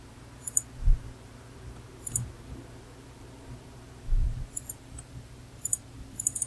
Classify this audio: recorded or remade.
remade